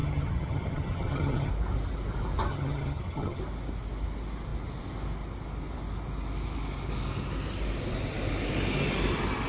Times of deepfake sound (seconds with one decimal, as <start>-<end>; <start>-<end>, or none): 0.0-1.5; 2.5-3.4